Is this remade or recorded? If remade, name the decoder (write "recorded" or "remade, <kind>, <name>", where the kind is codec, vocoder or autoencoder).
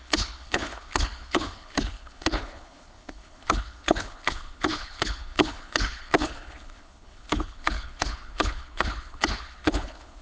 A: remade, codec, HILCodec